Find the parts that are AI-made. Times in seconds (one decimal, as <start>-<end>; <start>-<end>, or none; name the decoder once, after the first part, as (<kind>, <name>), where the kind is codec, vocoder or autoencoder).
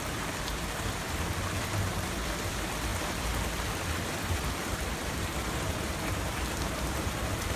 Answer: 0.0-7.6 (vocoder, BigVGAN v2)